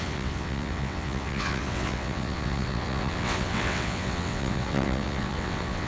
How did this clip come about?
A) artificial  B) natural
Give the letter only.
A